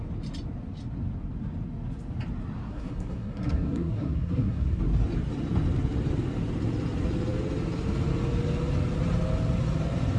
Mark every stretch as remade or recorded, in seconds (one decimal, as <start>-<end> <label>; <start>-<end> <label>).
0.0-2.7 recorded; 2.7-4.8 remade; 4.8-10.2 recorded